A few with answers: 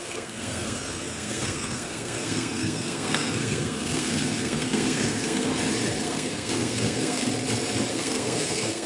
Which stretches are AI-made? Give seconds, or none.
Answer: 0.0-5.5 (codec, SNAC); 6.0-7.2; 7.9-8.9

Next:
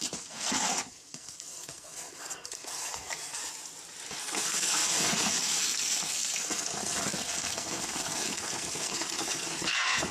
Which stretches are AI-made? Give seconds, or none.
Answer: 0.0-3.4 (codec, SNAC); 4.2-10.1

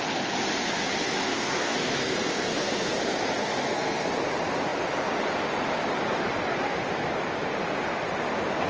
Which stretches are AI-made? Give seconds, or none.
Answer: 1.2-2.9 (codec, SNAC); 3.4-4.1

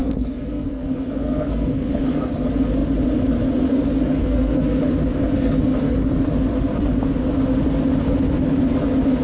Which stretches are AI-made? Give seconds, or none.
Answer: 0.0-2.3 (codec, SNAC); 4.2-4.8